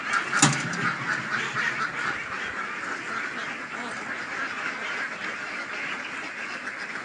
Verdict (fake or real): real